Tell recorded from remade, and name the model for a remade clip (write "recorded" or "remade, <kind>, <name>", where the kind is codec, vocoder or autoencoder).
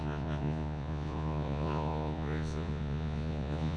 remade, vocoder, Vocos